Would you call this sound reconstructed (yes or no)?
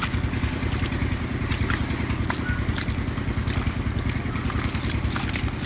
no